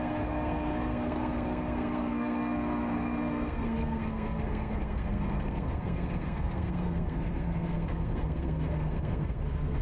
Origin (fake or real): fake